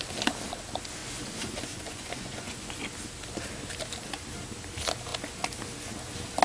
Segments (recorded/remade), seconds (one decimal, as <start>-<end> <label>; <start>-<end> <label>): 0.0-1.0 recorded; 1.0-2.8 remade; 2.8-6.4 recorded

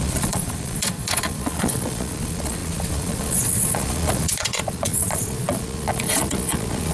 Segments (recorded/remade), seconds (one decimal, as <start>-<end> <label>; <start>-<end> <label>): 0.0-6.9 remade

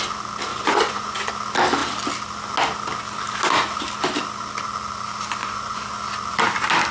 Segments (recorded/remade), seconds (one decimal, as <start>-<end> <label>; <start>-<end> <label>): 0.0-0.5 recorded; 0.5-1.3 remade; 1.3-5.4 recorded; 5.4-5.9 remade; 5.9-6.9 recorded

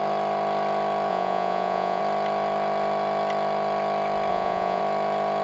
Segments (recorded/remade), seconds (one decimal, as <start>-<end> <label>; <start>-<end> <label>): 0.0-1.1 recorded; 1.1-2.0 remade; 2.0-4.3 recorded; 4.3-4.8 remade; 4.8-5.4 recorded